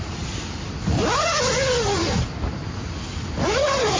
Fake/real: real